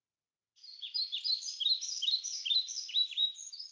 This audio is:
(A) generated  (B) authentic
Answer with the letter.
A